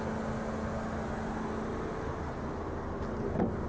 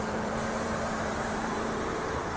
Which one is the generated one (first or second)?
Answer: second